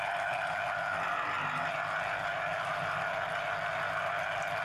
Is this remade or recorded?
recorded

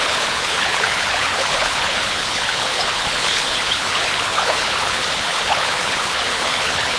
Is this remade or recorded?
remade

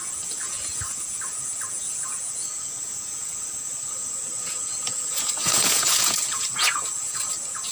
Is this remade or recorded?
remade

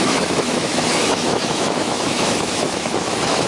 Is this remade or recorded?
remade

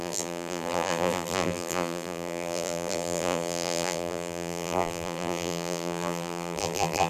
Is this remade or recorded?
remade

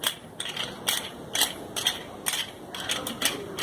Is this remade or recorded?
recorded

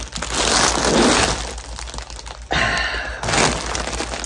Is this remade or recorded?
recorded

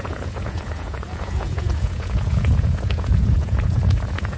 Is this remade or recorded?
remade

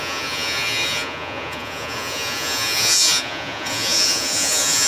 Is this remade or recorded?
remade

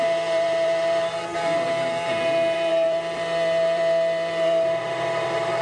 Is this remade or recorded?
remade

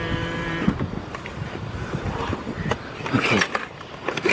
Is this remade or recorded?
remade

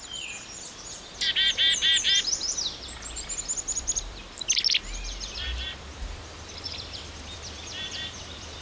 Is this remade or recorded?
remade